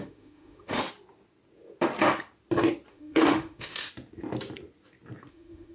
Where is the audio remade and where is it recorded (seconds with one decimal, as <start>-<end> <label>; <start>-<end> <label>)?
0.0-0.8 remade; 0.8-2.9 recorded; 2.9-3.9 remade; 3.9-5.3 recorded; 5.3-5.7 remade